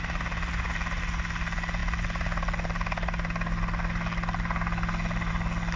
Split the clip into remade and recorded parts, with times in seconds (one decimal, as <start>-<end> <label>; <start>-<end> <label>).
0.0-5.8 recorded